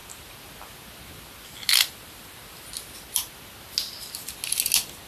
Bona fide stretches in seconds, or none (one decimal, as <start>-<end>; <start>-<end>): 0.0-5.1